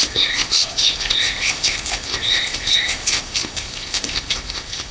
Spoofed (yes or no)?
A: yes